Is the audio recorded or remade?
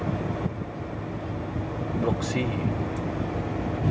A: recorded